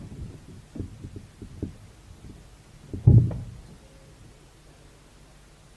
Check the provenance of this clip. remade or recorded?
recorded